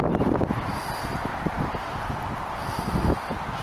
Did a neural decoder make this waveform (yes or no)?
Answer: no